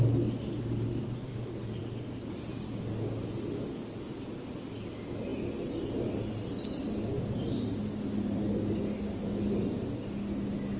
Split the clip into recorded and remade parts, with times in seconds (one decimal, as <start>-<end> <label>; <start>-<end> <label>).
0.0-0.9 recorded; 0.9-2.7 remade; 2.7-10.8 recorded